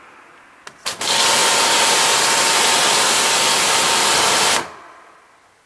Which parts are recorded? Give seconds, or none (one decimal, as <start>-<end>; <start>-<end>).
0.0-5.7